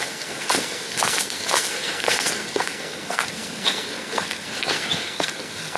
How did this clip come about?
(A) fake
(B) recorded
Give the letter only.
A